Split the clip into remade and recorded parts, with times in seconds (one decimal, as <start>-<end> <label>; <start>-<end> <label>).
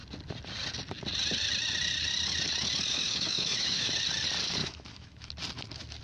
0.0-2.9 recorded; 2.9-3.9 remade; 3.9-4.6 recorded; 4.6-5.3 remade; 5.3-6.0 recorded